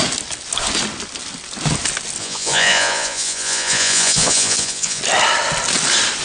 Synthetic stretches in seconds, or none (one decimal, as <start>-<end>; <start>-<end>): 2.2-5.0